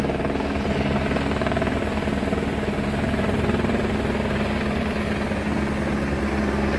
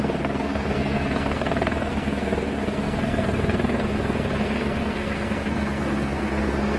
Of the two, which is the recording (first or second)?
first